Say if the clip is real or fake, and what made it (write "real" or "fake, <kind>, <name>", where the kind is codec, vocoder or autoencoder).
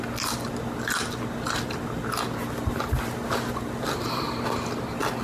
real